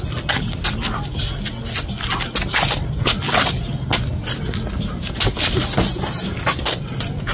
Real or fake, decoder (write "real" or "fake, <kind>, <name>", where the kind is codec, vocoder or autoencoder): real